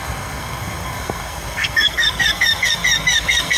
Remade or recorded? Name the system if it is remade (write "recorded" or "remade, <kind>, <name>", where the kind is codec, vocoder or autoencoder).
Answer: remade, codec, SNAC